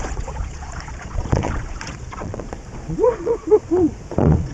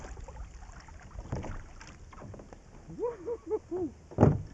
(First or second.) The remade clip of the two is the first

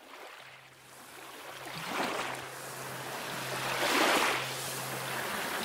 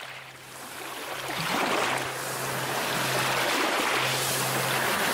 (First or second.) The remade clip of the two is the second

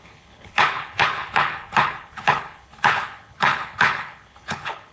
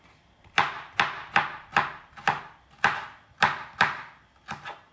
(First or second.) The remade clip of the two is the first